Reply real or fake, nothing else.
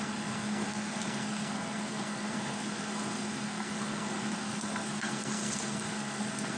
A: fake